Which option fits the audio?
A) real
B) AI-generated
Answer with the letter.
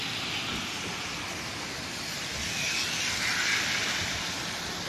A